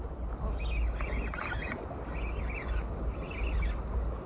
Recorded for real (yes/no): yes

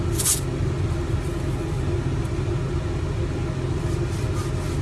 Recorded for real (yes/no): yes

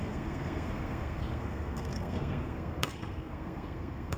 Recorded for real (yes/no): no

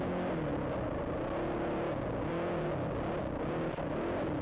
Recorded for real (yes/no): yes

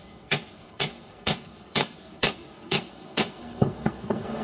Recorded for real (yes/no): no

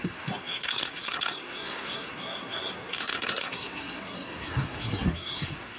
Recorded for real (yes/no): no